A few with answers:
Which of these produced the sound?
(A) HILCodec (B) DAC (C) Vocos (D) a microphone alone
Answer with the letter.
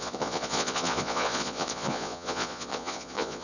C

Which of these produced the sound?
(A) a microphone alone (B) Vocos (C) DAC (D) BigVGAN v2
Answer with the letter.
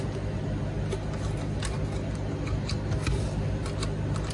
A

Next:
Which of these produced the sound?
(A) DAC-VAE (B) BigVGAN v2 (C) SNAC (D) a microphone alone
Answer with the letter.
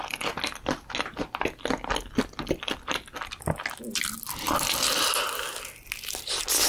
D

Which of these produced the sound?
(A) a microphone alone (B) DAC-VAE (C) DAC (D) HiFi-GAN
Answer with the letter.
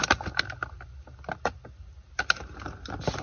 A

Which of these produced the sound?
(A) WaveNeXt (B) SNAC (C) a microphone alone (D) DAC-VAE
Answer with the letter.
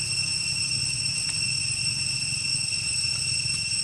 C